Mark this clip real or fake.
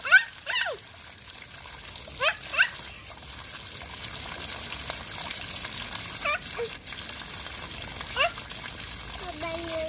real